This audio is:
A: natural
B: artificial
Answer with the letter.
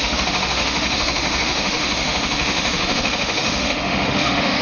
B